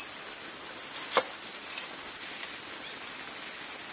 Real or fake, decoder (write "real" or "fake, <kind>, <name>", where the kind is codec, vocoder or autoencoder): real